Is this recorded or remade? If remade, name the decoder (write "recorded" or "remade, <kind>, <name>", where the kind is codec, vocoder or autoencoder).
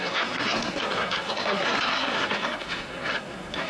remade, codec, SNAC